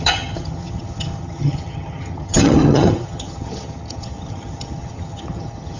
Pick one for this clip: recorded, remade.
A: remade